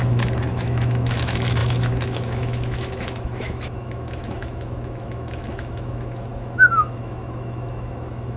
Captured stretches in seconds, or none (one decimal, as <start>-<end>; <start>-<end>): none